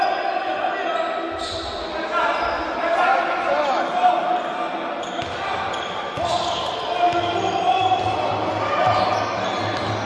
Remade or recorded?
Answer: recorded